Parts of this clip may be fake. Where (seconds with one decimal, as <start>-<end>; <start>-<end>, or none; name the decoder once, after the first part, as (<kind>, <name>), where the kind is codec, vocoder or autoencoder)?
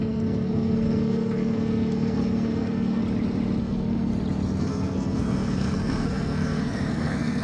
0.0-3.0 (codec, SNAC); 3.6-4.1; 4.6-7.4